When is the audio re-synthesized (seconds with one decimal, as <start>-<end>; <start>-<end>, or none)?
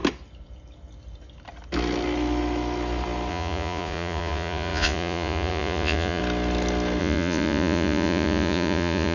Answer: 3.3-6.2; 7.0-9.1